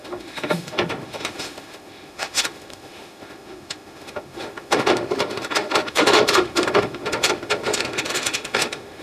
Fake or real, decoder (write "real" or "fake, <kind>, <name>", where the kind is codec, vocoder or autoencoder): fake, autoencoder, DAC-VAE